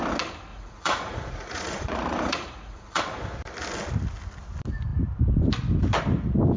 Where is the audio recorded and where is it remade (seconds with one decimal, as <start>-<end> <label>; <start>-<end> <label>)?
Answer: 0.0-0.5 recorded; 0.5-3.0 remade; 3.0-6.6 recorded